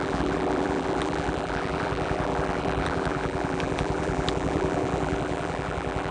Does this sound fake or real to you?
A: fake